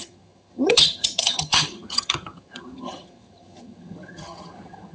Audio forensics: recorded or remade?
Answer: remade